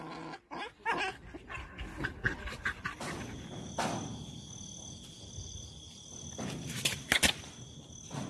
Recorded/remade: recorded